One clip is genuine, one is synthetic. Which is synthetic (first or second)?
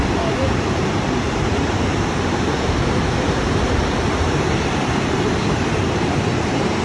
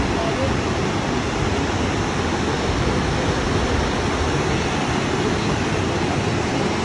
first